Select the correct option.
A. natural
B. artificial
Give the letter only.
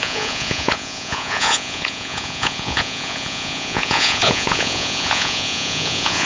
B